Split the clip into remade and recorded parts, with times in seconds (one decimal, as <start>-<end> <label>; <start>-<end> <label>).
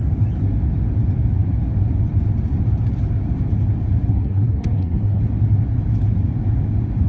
0.0-4.1 recorded; 4.1-5.2 remade; 5.2-7.1 recorded